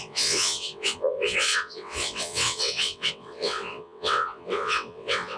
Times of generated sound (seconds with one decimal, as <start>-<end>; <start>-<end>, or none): 0.0-5.4